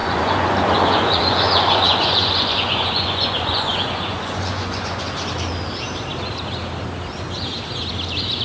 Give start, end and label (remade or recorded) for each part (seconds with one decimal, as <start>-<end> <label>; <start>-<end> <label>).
0.0-5.0 remade; 5.0-8.4 recorded